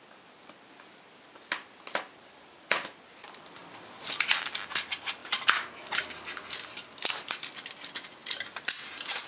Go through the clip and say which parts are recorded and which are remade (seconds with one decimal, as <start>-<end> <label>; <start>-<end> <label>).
0.0-3.6 recorded; 3.6-4.3 remade; 4.3-8.2 recorded; 8.2-9.3 remade

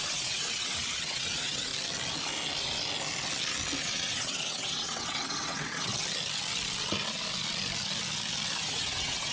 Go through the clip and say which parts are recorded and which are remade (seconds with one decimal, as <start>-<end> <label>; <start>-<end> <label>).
0.0-1.7 remade; 1.7-3.8 recorded; 3.8-5.9 remade; 5.9-8.6 recorded; 8.6-9.3 remade

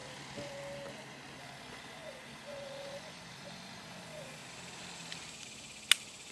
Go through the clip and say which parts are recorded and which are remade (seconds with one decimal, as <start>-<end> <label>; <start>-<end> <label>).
0.0-1.4 recorded; 1.4-4.4 remade; 4.4-6.3 recorded

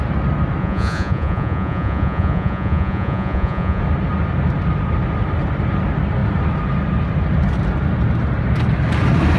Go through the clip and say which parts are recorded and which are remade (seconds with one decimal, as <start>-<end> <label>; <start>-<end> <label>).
0.0-0.6 recorded; 0.6-3.8 remade; 3.8-9.4 recorded

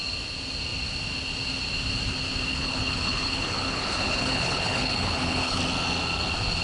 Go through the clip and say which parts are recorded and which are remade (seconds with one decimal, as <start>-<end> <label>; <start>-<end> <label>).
0.0-2.5 recorded; 2.5-5.6 remade; 5.6-6.6 recorded

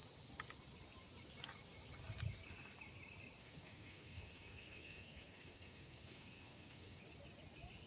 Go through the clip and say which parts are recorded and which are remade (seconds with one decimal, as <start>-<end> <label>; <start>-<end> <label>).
0.0-3.4 recorded; 3.4-7.0 remade; 7.0-7.9 recorded

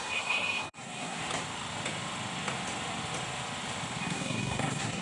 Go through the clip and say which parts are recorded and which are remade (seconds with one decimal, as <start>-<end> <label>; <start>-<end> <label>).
0.0-1.2 remade; 1.2-4.0 recorded; 4.0-5.0 remade

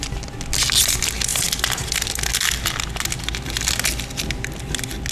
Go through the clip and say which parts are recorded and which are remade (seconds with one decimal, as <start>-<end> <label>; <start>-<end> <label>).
0.0-5.1 recorded